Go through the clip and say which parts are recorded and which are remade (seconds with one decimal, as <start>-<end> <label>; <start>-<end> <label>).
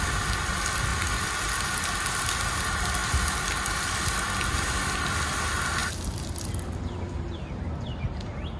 0.0-8.6 recorded